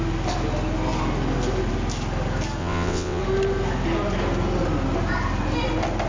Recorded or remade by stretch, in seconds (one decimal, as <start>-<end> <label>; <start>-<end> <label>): 0.0-2.6 recorded; 2.6-3.2 remade; 3.2-6.1 recorded